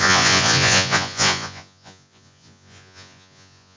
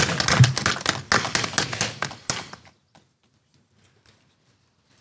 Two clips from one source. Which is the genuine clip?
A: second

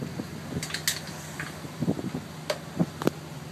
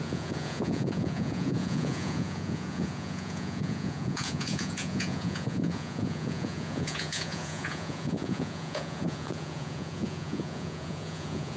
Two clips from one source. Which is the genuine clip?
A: first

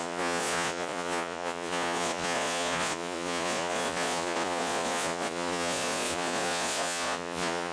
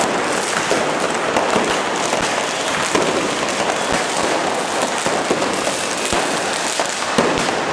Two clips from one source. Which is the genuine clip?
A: second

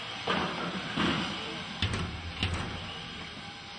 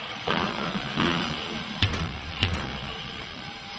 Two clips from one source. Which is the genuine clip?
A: first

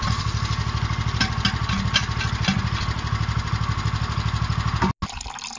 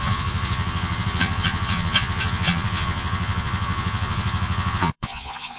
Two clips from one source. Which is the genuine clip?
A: first